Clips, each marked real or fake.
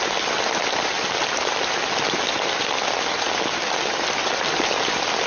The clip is real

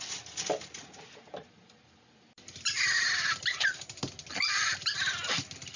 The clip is real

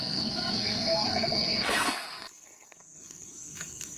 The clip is fake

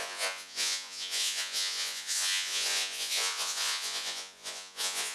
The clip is fake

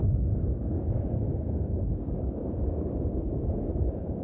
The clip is fake